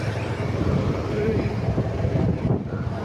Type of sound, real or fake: fake